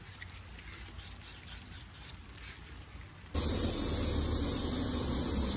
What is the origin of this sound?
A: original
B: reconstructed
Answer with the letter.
A